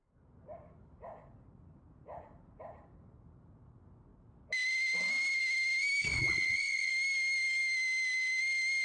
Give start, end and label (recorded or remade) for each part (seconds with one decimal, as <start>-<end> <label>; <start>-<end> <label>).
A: 0.0-6.0 recorded; 6.0-6.9 remade; 6.9-8.8 recorded